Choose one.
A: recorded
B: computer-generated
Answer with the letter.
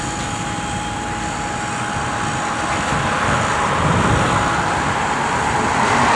B